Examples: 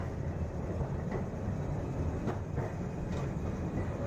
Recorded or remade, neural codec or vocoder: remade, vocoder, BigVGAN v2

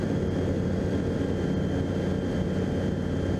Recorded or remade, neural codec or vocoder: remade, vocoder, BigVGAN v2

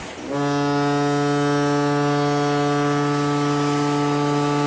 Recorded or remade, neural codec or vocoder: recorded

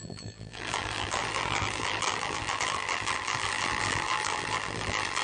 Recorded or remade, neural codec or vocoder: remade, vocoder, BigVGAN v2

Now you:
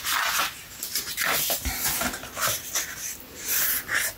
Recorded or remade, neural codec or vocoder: recorded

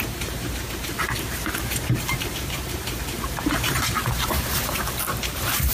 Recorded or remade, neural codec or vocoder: remade, vocoder, BigVGAN v2